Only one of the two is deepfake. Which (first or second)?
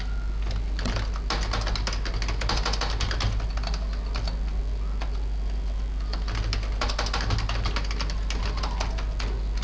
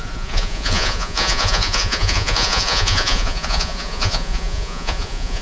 second